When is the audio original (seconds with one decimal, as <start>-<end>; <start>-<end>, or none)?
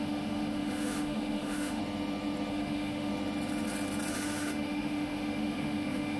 1.8-2.5; 3.1-4.1